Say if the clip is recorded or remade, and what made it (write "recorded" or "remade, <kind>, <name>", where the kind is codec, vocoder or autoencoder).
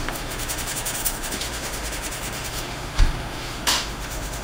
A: remade, autoencoder, DAC-VAE